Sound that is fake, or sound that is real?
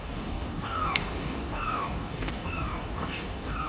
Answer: fake